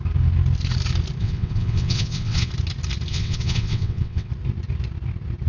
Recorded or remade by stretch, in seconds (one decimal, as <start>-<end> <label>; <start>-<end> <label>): 0.0-1.2 recorded; 1.2-2.5 remade; 2.5-3.1 recorded; 3.1-4.3 remade; 4.3-5.5 recorded